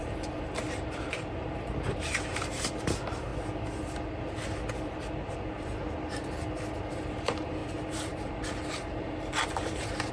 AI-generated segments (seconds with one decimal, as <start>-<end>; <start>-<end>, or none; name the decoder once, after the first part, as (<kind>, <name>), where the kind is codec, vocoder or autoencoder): 0.0-3.3 (vocoder, BigVGAN v2); 6.9-10.1